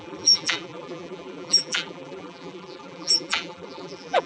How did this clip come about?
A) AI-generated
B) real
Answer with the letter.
A